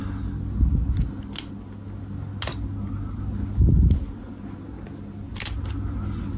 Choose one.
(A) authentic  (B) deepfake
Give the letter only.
A